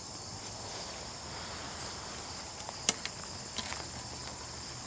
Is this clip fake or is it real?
real